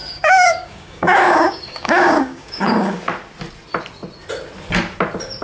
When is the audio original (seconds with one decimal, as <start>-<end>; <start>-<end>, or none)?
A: 3.0-5.4